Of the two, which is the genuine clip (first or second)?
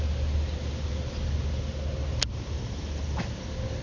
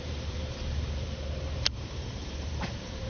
first